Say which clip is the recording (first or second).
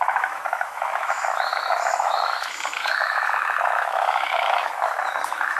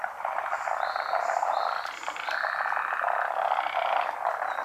second